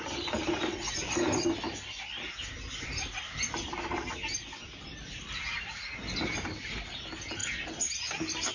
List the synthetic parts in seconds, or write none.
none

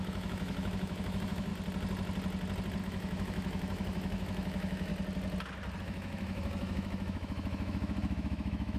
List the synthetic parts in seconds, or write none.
0.0-1.5 (autoencoder, DAC-VAE); 2.8-4.9; 5.8-8.8

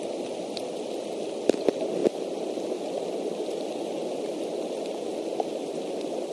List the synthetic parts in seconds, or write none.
none

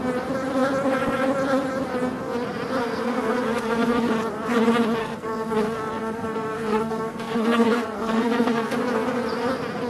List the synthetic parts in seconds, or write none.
2.8-4.1 (codec, SNAC); 5.0-8.8

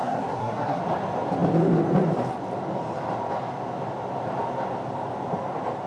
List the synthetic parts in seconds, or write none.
0.0-0.8 (codec, SNAC)